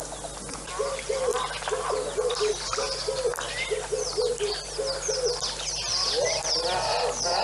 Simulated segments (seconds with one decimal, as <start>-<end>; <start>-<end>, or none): none